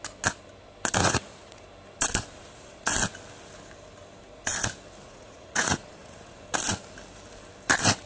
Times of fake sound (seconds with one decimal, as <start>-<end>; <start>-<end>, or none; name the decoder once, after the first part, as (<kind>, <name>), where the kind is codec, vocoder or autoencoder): 1.0-1.6 (vocoder, Vocos); 2.3-2.8; 5.0-6.4